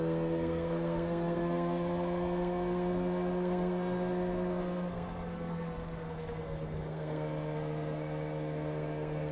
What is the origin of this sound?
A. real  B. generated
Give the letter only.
B